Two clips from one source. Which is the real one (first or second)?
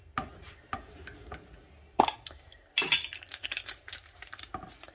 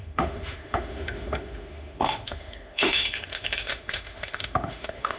first